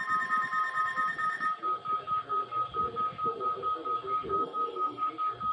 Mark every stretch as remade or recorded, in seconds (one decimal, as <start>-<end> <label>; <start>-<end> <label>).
0.0-4.4 recorded; 4.4-5.1 remade; 5.1-5.5 recorded